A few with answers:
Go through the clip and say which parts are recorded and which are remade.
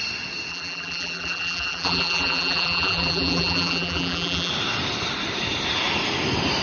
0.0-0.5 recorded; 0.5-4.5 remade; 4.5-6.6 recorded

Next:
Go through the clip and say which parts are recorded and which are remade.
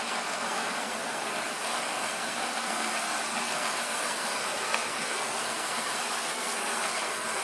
0.0-7.4 remade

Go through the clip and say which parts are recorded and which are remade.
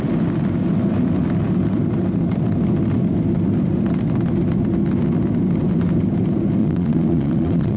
0.0-6.6 recorded; 6.6-7.8 remade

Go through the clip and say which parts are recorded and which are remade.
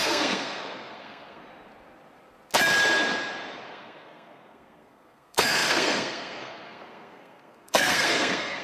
0.0-1.4 remade; 1.4-3.7 recorded; 3.7-8.6 remade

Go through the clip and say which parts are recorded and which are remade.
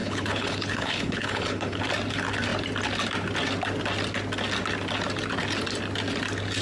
0.0-1.8 remade; 1.8-6.6 recorded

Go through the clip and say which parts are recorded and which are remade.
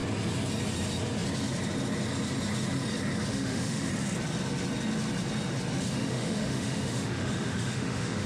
0.0-3.3 recorded; 3.3-3.9 remade; 3.9-5.9 recorded; 5.9-8.3 remade